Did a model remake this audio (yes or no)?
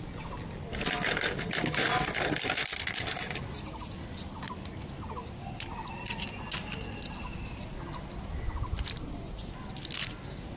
no